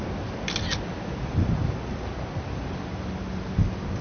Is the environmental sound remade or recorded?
recorded